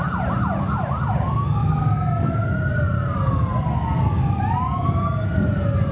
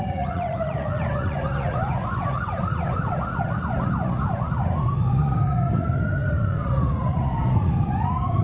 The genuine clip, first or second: first